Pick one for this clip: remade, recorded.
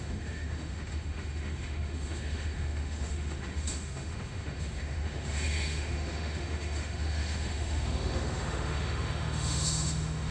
remade